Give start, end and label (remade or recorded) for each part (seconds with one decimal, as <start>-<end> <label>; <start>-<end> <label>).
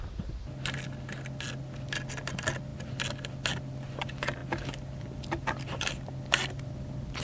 0.0-4.4 recorded; 4.4-5.9 remade; 5.9-7.2 recorded